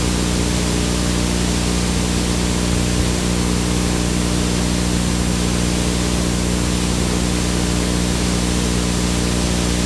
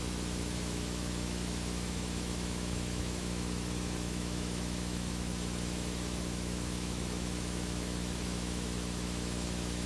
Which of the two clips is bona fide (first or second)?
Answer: first